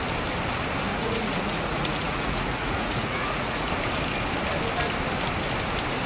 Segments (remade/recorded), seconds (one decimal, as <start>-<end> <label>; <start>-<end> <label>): 0.0-0.9 recorded; 0.9-3.7 remade; 3.7-6.1 recorded